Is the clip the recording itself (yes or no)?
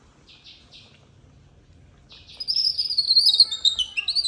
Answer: yes